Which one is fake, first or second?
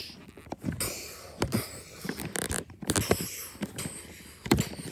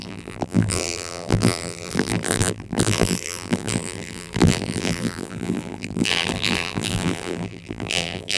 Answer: second